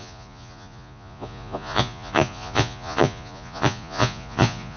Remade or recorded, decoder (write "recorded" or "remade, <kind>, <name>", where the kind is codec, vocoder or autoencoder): remade, vocoder, Vocos